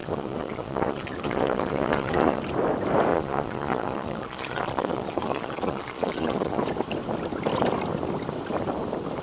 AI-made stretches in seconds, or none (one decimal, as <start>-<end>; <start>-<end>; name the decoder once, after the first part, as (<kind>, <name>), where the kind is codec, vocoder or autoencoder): 0.0-2.4 (vocoder, Vocos); 3.1-6.6